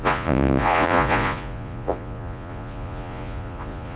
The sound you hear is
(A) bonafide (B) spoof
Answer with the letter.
B